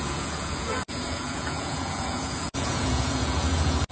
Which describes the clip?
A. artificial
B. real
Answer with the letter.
A